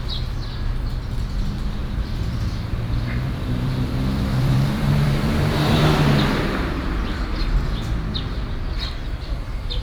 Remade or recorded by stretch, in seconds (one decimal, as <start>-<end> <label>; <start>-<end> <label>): 0.0-1.8 recorded; 1.8-5.8 remade; 5.8-9.8 recorded

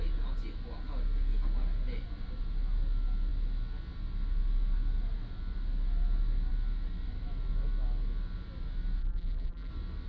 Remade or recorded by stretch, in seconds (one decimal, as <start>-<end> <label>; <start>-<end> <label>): 0.0-9.0 recorded; 9.0-9.7 remade; 9.7-10.1 recorded

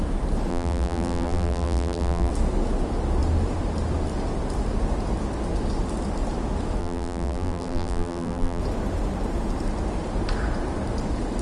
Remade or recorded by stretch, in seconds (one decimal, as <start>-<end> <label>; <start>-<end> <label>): 0.0-0.5 recorded; 0.5-2.3 remade; 2.3-6.8 recorded; 6.8-8.6 remade; 8.6-11.4 recorded